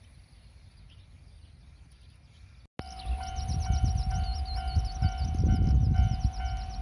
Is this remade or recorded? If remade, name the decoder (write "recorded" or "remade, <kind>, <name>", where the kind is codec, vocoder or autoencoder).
recorded